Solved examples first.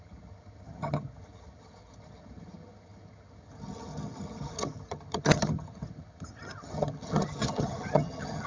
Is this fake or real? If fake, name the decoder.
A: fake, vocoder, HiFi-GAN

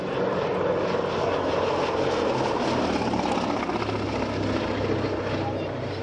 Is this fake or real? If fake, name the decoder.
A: real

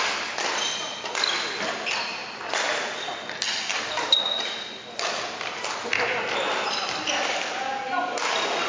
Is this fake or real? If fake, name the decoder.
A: real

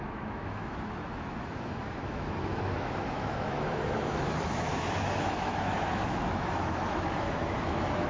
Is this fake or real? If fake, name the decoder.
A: fake, autoencoder, DAC-VAE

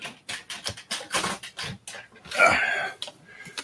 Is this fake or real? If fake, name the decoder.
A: real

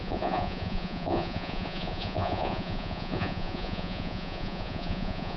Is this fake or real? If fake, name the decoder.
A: fake, vocoder, Vocos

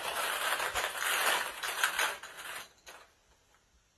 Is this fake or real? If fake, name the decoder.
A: real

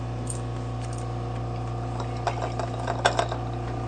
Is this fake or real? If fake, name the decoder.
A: real